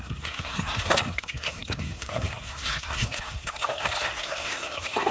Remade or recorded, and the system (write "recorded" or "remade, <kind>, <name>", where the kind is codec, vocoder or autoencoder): remade, codec, SNAC